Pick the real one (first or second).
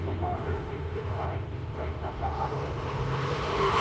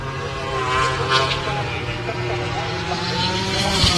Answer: second